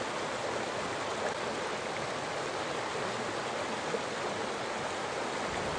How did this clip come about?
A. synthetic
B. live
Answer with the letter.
B